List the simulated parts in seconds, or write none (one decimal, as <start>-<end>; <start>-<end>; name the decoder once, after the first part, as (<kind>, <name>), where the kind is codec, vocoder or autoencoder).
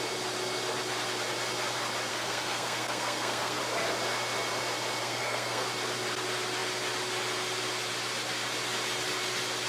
2.1-3.6 (codec, SNAC); 5.0-5.7